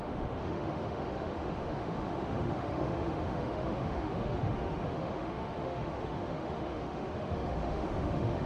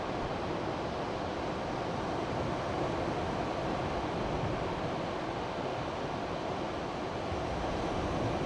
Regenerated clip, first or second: first